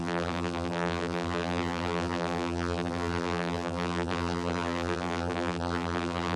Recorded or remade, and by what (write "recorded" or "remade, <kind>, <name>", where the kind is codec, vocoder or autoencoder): remade, vocoder, BigVGAN v2